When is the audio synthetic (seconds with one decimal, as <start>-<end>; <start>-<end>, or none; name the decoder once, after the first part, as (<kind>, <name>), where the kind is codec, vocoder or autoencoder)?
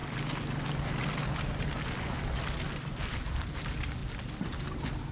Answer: none